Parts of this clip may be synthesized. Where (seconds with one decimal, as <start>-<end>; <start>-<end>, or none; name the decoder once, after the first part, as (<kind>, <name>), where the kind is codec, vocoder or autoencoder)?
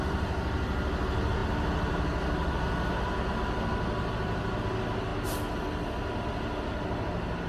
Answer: none